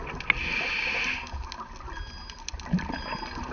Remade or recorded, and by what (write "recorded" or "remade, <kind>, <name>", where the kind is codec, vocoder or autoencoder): recorded